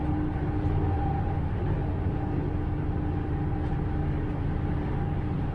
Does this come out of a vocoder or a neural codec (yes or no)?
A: no